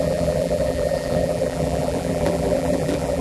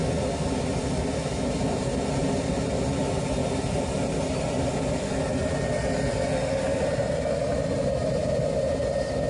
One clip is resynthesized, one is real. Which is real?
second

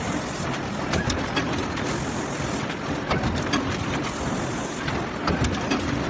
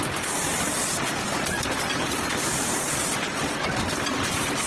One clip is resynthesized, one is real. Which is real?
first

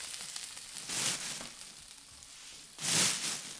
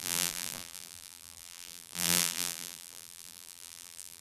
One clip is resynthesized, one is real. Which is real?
first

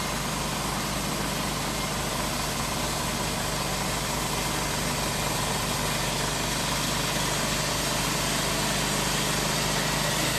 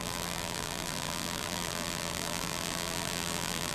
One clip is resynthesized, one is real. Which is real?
first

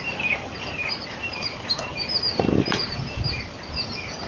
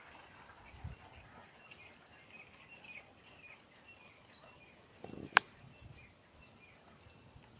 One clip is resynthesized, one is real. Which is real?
second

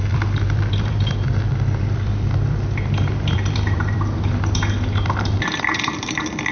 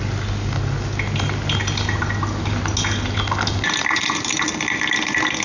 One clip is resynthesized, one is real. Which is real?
second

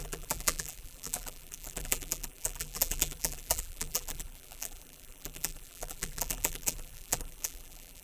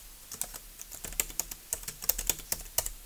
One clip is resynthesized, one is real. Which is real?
second